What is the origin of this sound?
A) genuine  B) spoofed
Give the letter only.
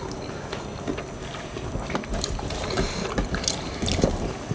A